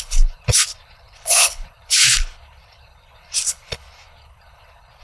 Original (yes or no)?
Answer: no